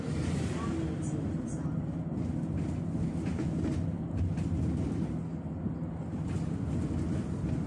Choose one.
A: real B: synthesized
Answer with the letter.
A